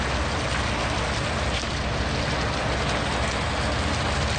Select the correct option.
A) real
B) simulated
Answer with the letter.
A